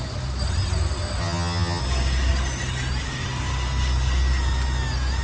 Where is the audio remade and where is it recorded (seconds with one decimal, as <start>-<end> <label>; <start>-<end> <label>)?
0.0-1.2 recorded; 1.2-1.8 remade; 1.8-5.2 recorded